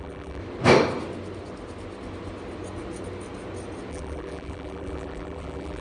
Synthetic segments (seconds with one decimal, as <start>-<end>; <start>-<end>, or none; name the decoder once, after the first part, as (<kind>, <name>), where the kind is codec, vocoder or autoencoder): 0.0-0.4 (vocoder, BigVGAN v2); 3.9-5.8